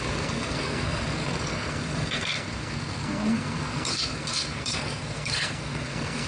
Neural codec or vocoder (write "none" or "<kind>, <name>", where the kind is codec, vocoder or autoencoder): codec, SNAC